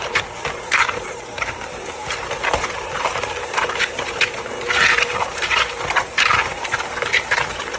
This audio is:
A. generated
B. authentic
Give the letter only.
A